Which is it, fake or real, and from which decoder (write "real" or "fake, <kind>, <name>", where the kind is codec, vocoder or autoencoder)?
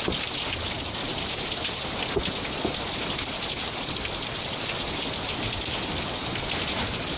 real